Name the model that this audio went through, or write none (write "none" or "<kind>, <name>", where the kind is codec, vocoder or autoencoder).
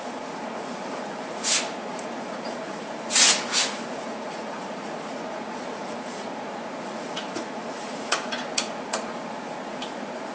vocoder, Vocos